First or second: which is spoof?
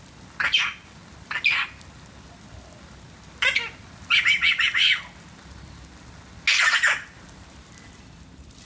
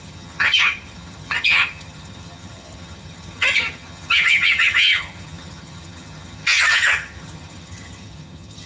second